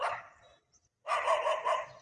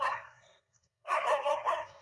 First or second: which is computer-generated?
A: second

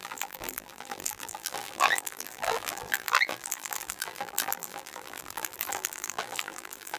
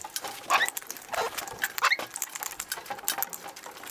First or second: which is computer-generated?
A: first